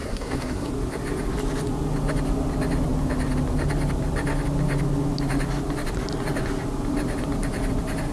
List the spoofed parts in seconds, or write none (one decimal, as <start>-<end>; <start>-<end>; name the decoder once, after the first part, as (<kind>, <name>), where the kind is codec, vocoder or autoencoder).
0.0-0.7 (codec, SNAC)